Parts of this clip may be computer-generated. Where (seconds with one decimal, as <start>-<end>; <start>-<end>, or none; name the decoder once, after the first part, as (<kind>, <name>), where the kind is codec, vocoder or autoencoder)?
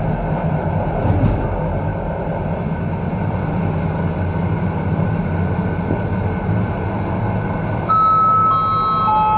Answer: none